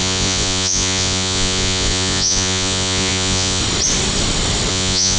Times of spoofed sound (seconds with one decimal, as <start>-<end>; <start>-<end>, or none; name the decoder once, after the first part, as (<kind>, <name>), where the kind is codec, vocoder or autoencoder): 0.0-3.6 (vocoder, Vocos); 4.7-5.2